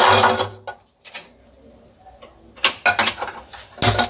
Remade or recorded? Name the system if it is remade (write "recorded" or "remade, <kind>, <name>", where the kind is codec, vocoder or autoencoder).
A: recorded